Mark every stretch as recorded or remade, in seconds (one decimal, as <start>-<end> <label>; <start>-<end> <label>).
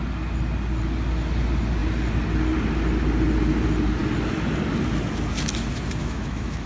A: 0.0-6.0 recorded; 6.0-6.7 remade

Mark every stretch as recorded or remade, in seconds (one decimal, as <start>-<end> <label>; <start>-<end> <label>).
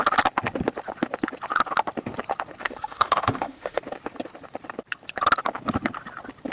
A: 0.0-2.6 recorded; 2.6-3.8 remade; 3.8-6.5 recorded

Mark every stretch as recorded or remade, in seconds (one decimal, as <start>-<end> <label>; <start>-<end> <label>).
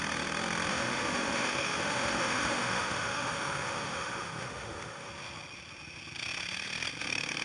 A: 0.0-0.7 recorded; 0.7-5.1 remade; 5.1-7.4 recorded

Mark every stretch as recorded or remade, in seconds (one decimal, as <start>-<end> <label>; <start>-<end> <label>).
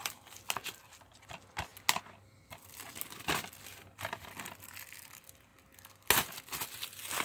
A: 0.0-7.2 recorded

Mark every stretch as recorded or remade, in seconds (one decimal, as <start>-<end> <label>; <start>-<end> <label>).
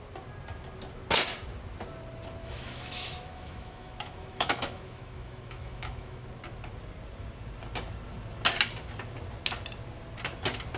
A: 0.0-2.4 recorded; 2.4-6.2 remade; 6.2-10.8 recorded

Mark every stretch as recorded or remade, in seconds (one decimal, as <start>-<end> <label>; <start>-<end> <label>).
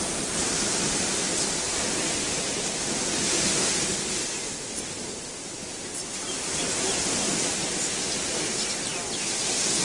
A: 0.0-9.8 recorded